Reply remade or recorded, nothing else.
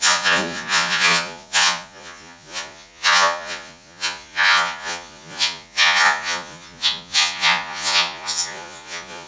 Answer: remade